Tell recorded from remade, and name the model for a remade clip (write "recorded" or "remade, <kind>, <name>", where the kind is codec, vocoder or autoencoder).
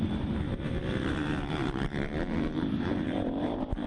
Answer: remade, vocoder, BigVGAN v2